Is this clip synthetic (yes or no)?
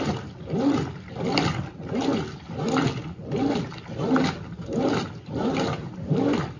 no